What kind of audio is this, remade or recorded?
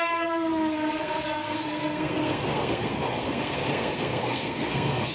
remade